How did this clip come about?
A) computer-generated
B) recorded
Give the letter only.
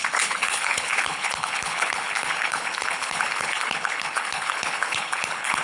A